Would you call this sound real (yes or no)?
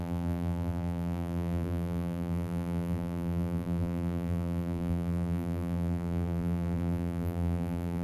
no